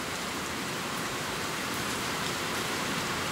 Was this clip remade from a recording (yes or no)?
yes